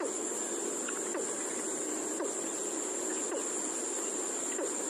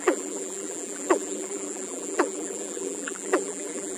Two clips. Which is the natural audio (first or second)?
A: first